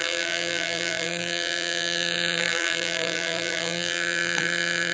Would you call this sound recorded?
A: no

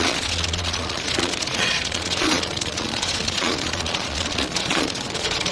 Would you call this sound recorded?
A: no